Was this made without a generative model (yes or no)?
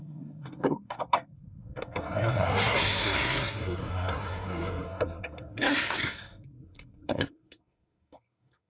no